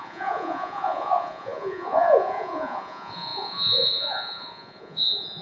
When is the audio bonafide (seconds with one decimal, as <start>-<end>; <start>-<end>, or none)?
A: none